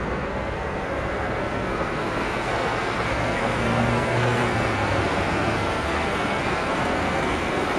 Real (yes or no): no